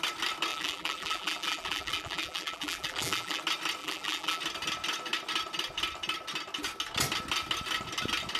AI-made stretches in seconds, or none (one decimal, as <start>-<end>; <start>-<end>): 0.5-3.4; 3.8-4.4